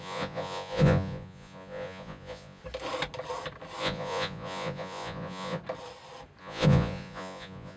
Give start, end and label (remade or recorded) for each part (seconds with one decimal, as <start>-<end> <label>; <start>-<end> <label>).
0.0-2.6 remade; 2.6-3.8 recorded; 3.8-5.6 remade; 5.6-6.4 recorded; 6.4-7.8 remade